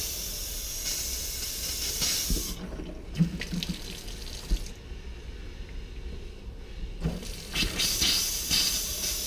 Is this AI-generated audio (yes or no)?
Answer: no